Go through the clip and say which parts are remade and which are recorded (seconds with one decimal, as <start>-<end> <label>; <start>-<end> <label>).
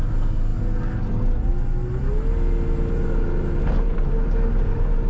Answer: 0.0-5.1 recorded